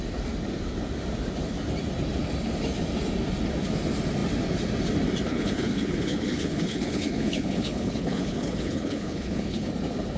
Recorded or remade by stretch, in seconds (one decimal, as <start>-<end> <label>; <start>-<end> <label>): 0.0-5.3 recorded; 5.3-9.7 remade; 9.7-10.2 recorded